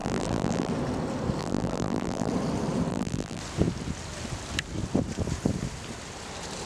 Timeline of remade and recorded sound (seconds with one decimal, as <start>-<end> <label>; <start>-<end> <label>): 0.0-0.7 remade; 0.7-1.4 recorded; 1.4-2.3 remade; 2.3-2.9 recorded; 2.9-3.4 remade; 3.4-6.7 recorded